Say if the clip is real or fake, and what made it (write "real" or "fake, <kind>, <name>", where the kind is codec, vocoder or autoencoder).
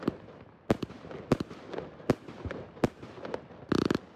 real